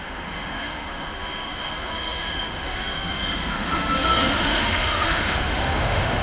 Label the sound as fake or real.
fake